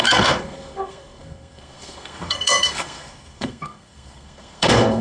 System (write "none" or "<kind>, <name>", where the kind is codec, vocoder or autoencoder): codec, SNAC